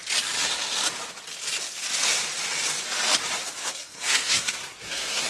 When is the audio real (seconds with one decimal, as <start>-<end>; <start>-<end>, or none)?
0.0-3.6